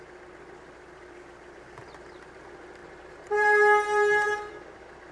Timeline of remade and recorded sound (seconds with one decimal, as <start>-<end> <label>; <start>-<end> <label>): 0.0-2.8 recorded; 2.8-4.5 remade; 4.5-5.1 recorded